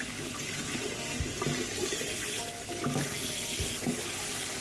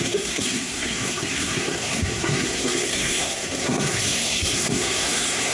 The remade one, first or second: second